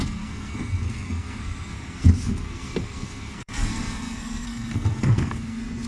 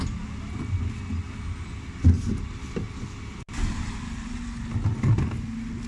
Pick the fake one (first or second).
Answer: first